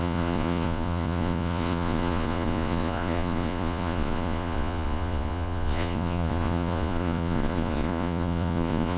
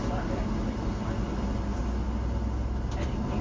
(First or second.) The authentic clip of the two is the second